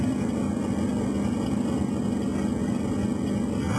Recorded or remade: recorded